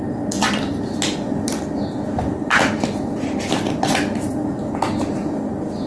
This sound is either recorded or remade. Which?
recorded